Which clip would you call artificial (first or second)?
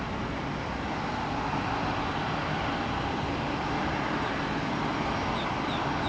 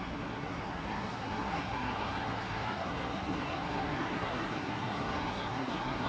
second